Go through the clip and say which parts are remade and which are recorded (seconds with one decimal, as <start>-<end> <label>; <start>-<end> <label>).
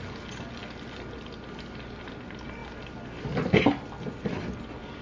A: 0.0-5.0 recorded